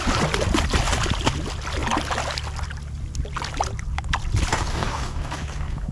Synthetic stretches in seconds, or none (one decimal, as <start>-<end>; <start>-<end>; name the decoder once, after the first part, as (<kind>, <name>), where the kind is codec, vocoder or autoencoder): 4.5-5.9 (codec, DAC)